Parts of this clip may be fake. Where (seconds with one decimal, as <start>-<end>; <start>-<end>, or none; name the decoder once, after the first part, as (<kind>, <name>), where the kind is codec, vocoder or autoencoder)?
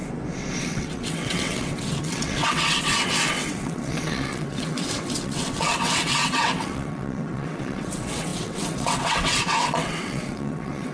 0.6-10.9 (vocoder, WaveNeXt)